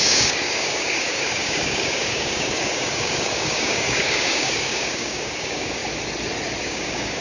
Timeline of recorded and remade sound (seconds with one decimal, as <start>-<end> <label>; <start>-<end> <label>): 0.0-5.8 remade; 5.8-6.6 recorded; 6.6-7.2 remade